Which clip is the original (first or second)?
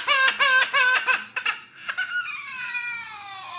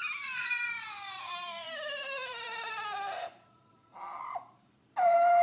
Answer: first